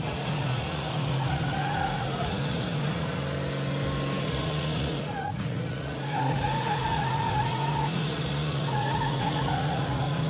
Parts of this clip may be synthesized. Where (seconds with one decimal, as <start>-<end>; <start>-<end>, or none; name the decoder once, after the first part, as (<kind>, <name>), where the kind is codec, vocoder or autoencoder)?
0.0-3.2 (vocoder, Vocos); 4.2-10.3